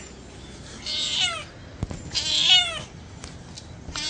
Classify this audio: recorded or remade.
recorded